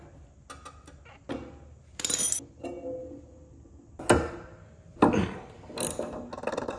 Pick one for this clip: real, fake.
real